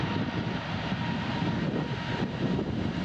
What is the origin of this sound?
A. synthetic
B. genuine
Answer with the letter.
B